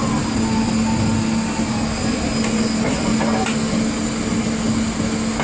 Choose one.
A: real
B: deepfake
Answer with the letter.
A